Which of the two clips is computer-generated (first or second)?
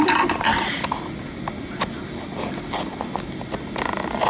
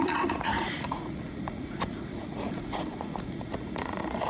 second